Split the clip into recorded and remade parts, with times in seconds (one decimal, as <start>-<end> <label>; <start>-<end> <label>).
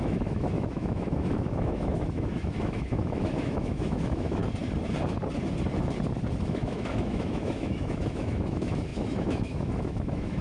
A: 0.0-4.4 remade; 4.4-6.4 recorded; 6.4-10.4 remade